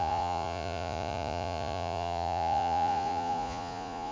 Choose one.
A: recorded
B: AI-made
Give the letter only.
B